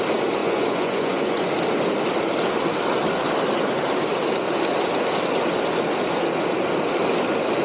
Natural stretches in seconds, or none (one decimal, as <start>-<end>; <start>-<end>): 0.0-0.4; 1.5-7.6